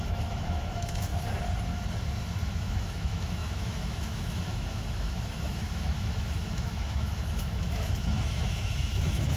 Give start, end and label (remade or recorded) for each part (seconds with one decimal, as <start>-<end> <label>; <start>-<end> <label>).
0.0-1.1 remade; 1.1-2.4 recorded; 2.4-9.4 remade